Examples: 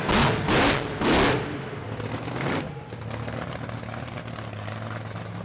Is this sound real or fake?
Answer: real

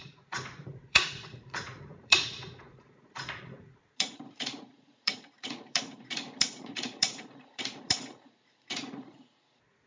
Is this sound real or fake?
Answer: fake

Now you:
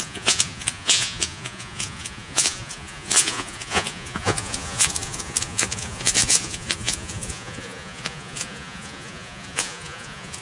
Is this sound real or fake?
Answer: fake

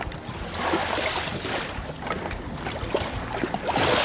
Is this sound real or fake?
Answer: real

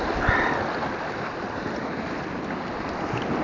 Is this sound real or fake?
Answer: real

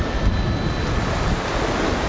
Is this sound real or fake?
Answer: real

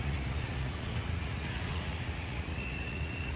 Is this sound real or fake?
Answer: fake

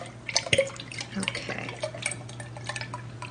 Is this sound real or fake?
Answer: real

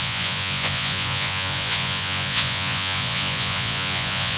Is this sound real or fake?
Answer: fake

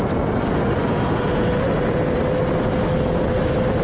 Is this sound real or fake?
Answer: real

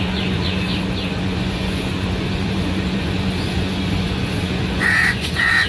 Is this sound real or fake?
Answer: fake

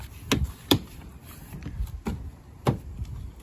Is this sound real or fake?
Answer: real